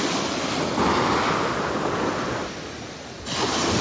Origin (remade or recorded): recorded